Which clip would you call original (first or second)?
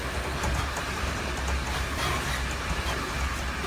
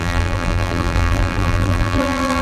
first